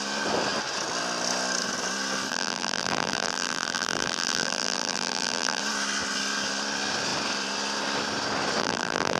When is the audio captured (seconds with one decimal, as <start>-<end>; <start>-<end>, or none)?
0.0-2.3; 5.6-8.6